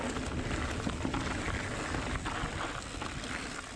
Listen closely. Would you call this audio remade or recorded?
recorded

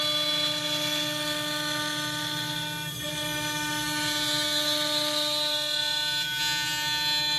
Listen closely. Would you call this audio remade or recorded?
recorded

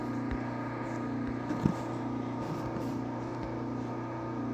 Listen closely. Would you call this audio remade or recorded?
recorded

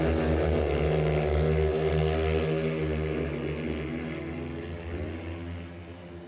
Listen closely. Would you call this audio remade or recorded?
recorded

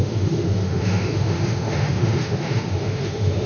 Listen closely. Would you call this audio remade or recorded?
remade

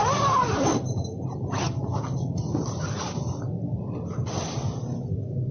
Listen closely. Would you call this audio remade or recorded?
recorded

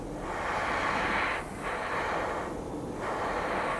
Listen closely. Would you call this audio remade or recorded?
recorded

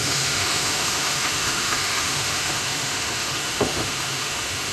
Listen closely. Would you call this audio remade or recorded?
remade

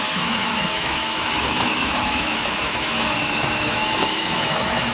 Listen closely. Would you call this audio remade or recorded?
remade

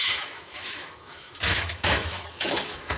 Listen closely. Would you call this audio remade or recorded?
remade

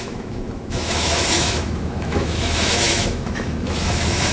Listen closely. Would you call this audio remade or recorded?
remade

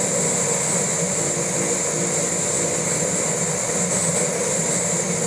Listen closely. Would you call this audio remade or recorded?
recorded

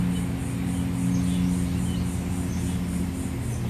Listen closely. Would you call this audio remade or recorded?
recorded